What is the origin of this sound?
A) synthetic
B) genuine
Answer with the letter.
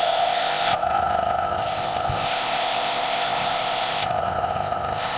A